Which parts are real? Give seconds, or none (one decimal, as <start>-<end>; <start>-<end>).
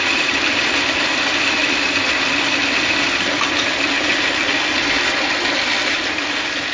1.6-5.6